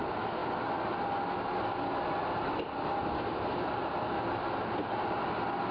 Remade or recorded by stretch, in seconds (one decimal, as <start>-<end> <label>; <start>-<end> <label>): 0.0-5.7 recorded